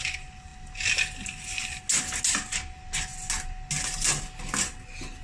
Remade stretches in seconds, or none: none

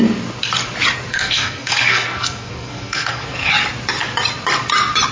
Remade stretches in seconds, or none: 1.1-3.5 (codec, SNAC)

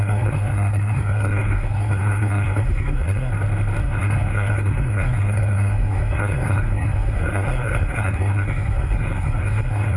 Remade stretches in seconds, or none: 0.0-3.3 (codec, SNAC); 3.8-10.0

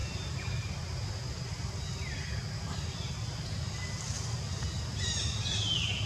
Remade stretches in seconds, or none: none

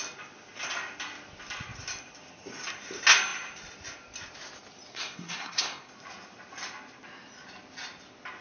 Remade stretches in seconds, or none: 4.9-5.9 (codec, SNAC)

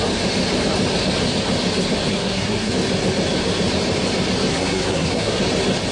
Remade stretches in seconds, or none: 2.1-2.7 (codec, SNAC); 4.5-5.4

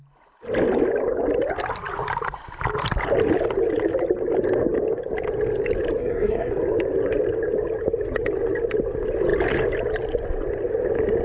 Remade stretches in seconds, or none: 6.0-6.5 (codec, SNAC)